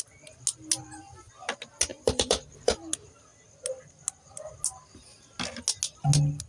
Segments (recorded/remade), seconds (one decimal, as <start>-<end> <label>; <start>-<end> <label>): 0.0-1.9 recorded; 1.9-2.8 remade; 2.8-6.5 recorded